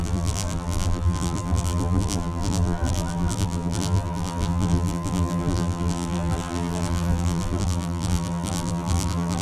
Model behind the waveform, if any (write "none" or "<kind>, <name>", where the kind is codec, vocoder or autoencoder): vocoder, BigVGAN v2